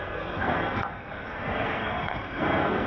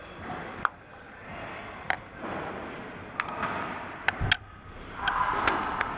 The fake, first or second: first